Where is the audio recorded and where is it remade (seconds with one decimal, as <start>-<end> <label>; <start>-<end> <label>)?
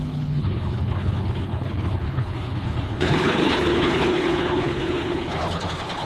0.0-6.1 remade